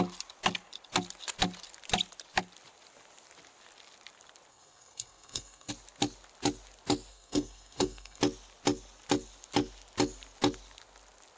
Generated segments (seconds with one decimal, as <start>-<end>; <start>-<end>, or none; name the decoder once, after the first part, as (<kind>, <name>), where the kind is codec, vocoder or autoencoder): 4.5-5.7 (codec, SNAC); 7.1-8.2